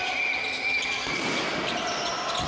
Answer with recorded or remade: recorded